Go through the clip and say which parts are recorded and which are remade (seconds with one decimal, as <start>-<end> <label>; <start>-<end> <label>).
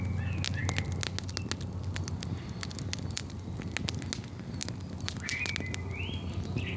0.0-6.8 recorded